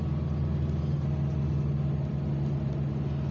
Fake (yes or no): no